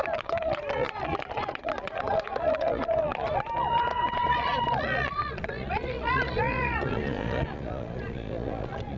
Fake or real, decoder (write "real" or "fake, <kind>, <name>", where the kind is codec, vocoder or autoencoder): fake, vocoder, Vocos